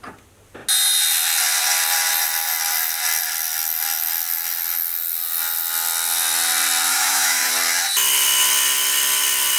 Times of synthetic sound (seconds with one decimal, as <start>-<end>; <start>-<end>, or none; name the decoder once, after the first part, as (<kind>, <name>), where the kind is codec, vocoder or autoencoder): 6.9-7.5 (autoencoder, DAC-VAE)